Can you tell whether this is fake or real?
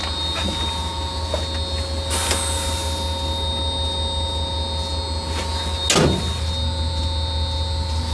real